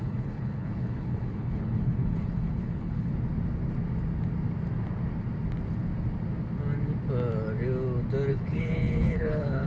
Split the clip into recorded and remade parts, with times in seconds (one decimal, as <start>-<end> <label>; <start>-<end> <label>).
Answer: 0.0-3.1 remade; 3.1-8.3 recorded; 8.3-9.7 remade